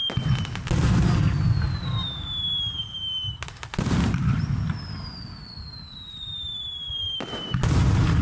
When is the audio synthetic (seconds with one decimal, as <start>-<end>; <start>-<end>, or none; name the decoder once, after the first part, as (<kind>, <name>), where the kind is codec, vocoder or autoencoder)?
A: none